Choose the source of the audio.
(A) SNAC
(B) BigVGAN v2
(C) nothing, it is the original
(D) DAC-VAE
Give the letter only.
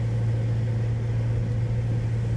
C